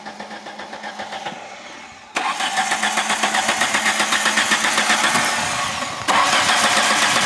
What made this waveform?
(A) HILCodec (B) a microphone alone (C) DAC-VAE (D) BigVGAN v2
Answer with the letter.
B